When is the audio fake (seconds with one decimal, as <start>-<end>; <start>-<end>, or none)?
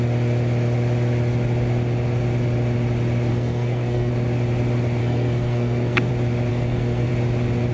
3.3-4.1; 5.0-6.1; 6.5-7.1